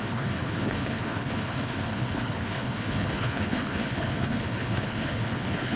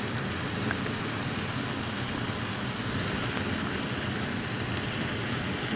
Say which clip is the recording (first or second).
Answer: second